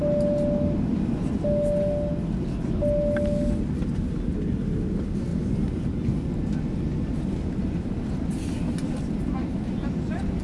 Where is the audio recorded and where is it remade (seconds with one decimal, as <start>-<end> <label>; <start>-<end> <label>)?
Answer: 0.0-10.4 recorded